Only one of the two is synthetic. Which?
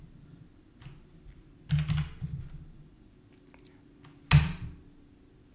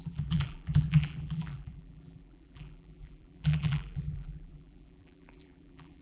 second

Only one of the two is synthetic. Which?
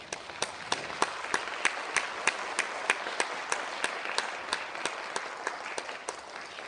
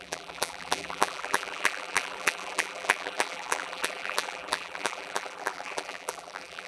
second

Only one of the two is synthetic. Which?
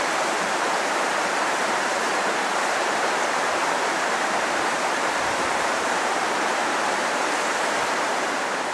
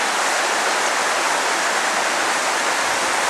first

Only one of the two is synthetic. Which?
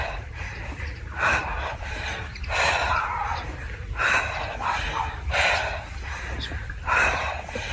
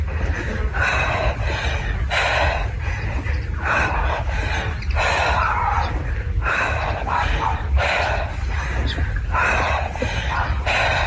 first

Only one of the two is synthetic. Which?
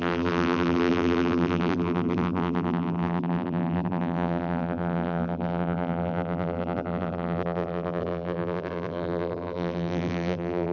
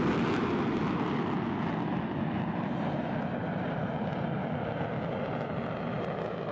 first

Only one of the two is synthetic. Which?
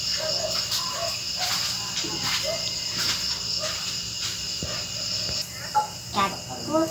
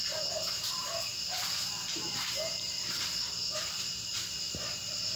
second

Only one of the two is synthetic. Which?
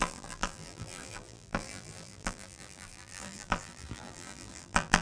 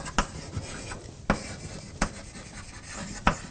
first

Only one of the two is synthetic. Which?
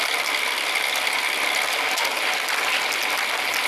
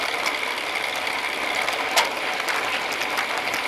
second